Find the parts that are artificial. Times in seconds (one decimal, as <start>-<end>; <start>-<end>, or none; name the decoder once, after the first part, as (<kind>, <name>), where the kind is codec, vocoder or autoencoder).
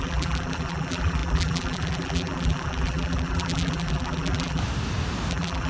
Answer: 0.0-4.6 (vocoder, BigVGAN v2); 5.3-5.7